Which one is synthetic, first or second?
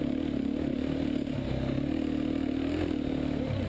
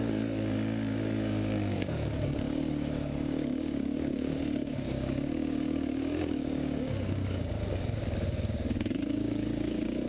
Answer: second